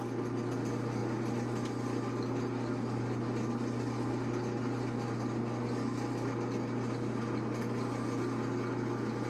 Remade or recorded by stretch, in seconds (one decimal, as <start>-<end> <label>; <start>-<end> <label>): 0.0-9.3 recorded